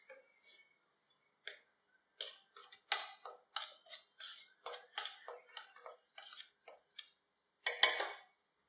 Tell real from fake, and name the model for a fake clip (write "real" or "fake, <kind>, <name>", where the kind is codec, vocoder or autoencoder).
real